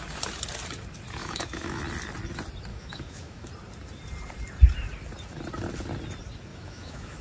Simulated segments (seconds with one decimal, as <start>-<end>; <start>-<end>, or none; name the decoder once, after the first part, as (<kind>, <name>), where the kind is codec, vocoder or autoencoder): 1.2-1.8 (autoencoder, DAC-VAE); 2.7-3.5; 6.5-7.2